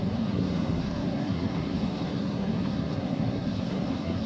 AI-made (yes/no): yes